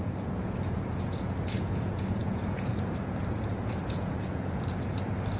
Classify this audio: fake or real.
fake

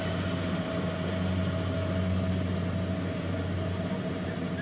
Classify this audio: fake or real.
real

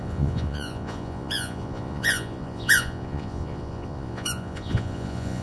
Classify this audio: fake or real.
fake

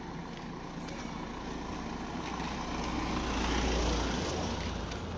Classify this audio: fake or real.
real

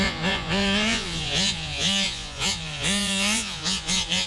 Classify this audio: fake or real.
fake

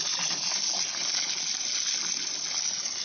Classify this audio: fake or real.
real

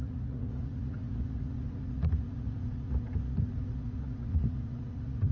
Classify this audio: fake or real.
fake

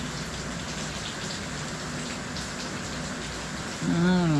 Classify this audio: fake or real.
real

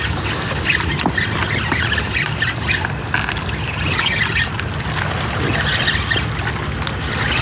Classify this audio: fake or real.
real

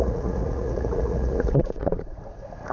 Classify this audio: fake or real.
fake